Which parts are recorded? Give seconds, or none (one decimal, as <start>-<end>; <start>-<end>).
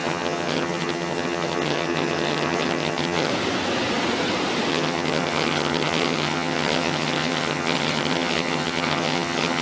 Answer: 3.3-4.7